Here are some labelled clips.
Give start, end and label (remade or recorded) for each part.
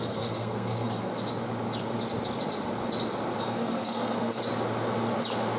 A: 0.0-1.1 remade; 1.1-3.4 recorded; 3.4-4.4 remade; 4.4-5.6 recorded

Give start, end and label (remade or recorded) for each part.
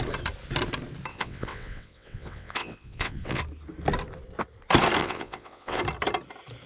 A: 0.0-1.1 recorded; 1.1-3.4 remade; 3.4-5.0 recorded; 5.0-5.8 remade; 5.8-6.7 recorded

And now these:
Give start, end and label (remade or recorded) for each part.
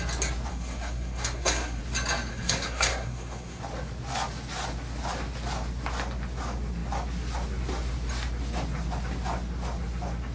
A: 0.0-0.5 recorded; 0.5-1.8 remade; 1.8-2.3 recorded; 2.3-3.6 remade; 3.6-10.3 recorded